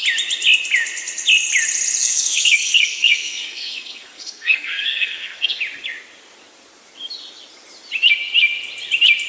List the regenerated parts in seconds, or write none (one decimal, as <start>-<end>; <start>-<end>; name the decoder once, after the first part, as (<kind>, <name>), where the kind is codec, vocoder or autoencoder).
2.0-5.6 (codec, SNAC)